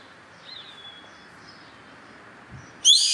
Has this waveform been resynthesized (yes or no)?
no